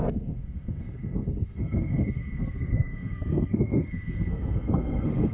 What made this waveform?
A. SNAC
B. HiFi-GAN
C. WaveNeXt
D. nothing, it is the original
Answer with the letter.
A